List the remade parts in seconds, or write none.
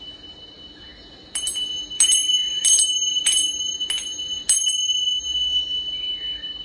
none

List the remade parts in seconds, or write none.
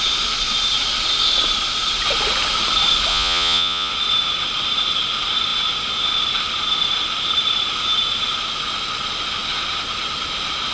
3.1-3.9 (vocoder, Vocos)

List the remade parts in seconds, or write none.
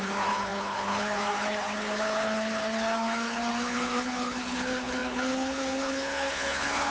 0.0-6.9 (codec, HILCodec)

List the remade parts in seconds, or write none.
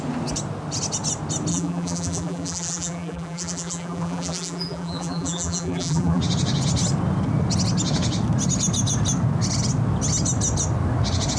1.5-6.2 (vocoder, BigVGAN v2)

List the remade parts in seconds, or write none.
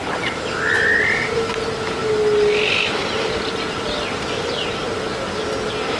none